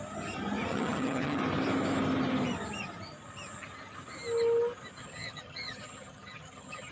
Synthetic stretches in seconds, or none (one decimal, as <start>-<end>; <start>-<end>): 0.7-1.4; 5.0-6.9